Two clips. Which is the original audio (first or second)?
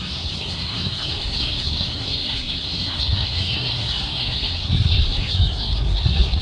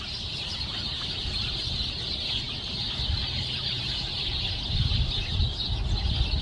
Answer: second